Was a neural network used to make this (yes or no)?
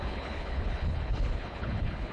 yes